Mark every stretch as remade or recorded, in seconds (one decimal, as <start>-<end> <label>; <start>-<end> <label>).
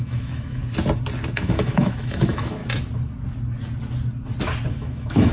0.0-0.6 remade; 0.6-1.3 recorded; 1.3-2.6 remade; 2.6-4.7 recorded; 4.7-5.3 remade